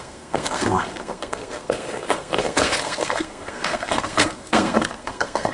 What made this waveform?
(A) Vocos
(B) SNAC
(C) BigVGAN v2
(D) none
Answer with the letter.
B